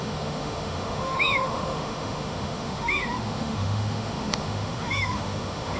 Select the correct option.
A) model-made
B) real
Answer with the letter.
A